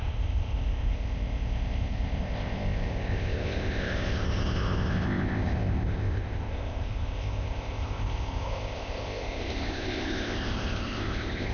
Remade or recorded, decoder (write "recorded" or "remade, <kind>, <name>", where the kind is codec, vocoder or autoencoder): remade, codec, ZipCodec